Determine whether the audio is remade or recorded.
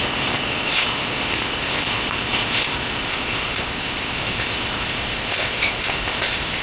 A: remade